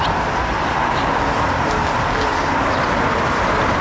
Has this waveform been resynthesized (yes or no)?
no